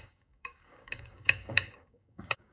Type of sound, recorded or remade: remade